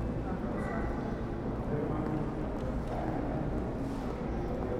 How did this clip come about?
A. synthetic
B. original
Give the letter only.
B